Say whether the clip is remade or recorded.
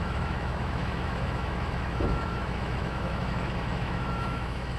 remade